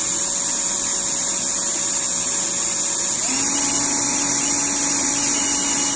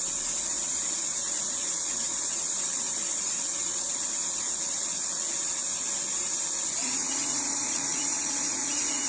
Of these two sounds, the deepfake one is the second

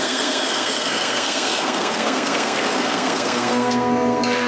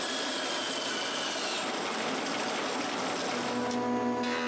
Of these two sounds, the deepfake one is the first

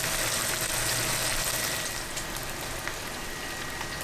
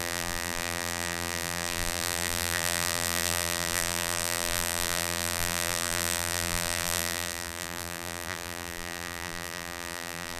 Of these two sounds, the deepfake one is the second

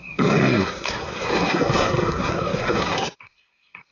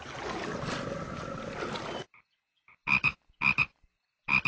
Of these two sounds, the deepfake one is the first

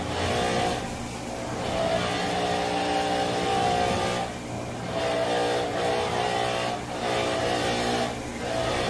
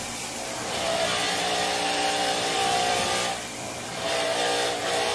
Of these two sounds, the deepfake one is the second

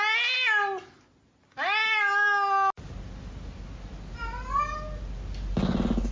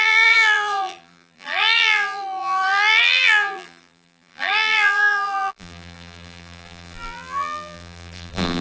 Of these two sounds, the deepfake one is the second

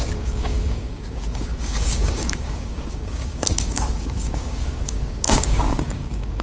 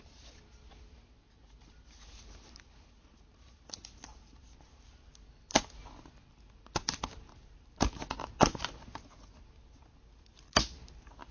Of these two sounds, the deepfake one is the first